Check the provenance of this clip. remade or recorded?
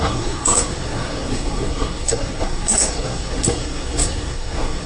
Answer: remade